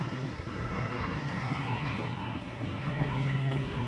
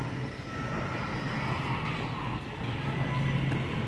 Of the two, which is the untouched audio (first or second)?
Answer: second